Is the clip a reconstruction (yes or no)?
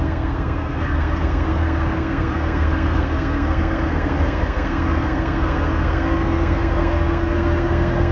yes